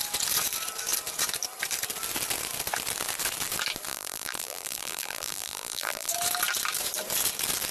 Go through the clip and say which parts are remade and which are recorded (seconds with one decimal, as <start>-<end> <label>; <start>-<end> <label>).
0.0-3.9 recorded; 3.9-6.1 remade; 6.1-7.7 recorded

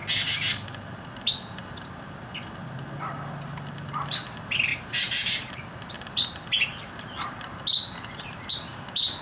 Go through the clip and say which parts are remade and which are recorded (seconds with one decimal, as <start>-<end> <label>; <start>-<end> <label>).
0.0-4.7 recorded; 4.7-5.5 remade; 5.5-9.2 recorded

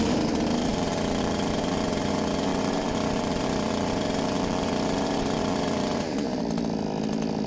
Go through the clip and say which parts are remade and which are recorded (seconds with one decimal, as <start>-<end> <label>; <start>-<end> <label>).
0.0-0.7 recorded; 0.7-2.1 remade; 2.1-2.5 recorded; 2.5-6.4 remade; 6.4-7.5 recorded

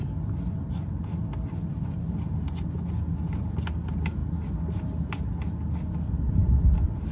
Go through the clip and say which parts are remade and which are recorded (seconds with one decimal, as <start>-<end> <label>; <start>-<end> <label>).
0.0-7.1 recorded

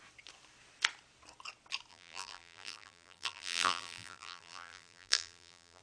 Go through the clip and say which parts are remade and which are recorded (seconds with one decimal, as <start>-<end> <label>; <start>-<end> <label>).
0.0-1.9 recorded; 1.9-5.8 remade

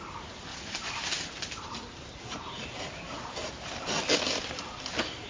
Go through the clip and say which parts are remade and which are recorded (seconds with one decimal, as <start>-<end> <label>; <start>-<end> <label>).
0.0-0.5 recorded; 0.5-3.7 remade; 3.7-5.3 recorded